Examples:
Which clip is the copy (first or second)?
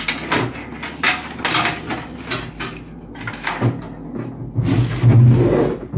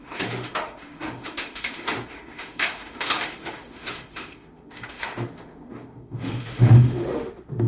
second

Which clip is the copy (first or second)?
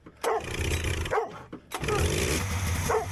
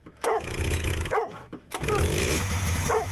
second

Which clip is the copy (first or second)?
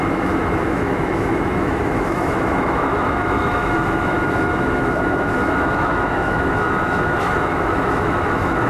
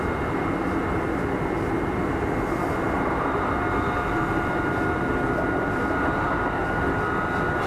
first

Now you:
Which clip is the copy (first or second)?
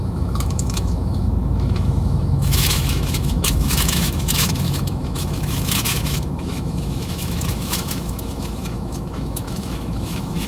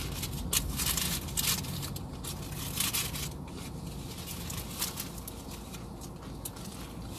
first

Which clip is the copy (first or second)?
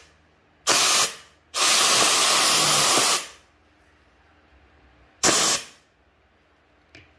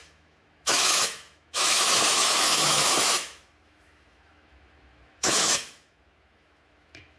second